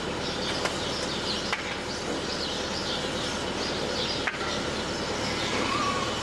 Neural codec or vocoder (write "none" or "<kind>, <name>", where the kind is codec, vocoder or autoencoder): none